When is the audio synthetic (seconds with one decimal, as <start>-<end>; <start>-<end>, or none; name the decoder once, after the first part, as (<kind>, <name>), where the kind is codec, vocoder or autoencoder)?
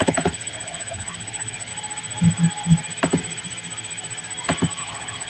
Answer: 0.0-1.7 (codec, HILCodec); 4.8-5.3